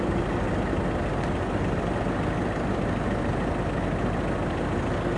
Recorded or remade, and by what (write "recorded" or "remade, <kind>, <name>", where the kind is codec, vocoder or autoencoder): recorded